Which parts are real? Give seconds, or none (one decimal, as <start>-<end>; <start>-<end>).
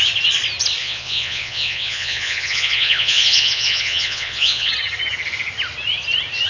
0.0-0.8; 4.7-6.5